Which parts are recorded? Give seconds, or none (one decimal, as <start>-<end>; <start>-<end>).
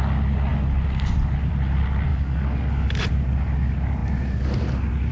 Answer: 0.0-2.1; 3.0-5.1